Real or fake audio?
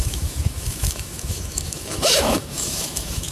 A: fake